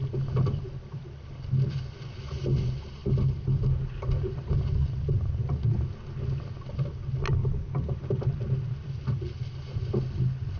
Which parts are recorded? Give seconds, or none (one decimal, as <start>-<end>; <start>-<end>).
0.0-7.4; 8.3-10.6